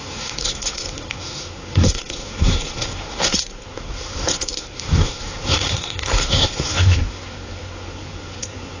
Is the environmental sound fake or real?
fake